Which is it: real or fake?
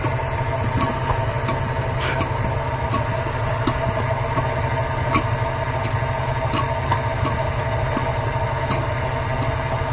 real